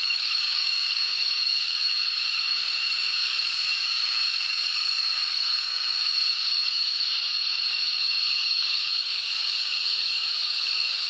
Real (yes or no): no